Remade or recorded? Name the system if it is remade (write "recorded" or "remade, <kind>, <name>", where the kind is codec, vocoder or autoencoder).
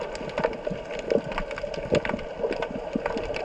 recorded